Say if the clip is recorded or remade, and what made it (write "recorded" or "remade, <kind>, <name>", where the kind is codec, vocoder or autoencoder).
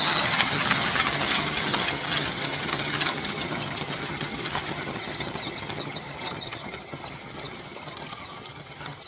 remade, vocoder, HiFi-GAN